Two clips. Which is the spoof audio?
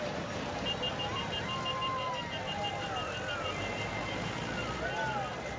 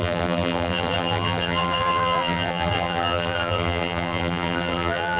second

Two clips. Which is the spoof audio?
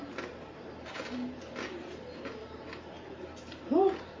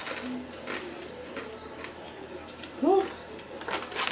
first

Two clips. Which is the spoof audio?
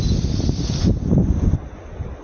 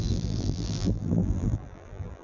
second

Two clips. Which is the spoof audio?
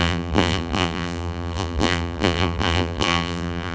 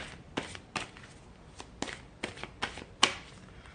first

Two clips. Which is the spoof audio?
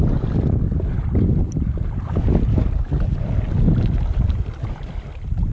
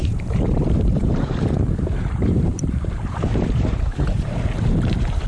second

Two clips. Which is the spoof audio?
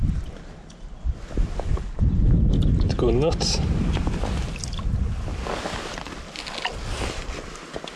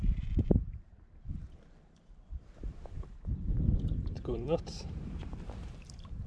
second